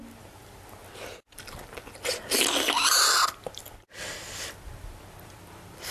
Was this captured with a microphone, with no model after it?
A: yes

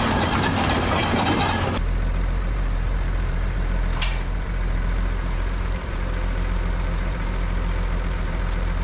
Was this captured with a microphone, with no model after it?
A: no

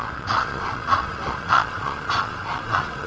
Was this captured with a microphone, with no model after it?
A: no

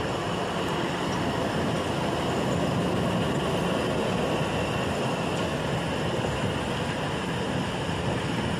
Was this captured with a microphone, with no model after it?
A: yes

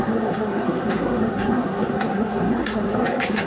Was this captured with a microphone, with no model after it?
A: no